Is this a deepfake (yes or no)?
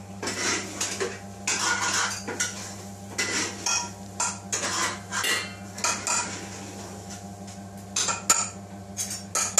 no